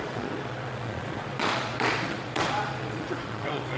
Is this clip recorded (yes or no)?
no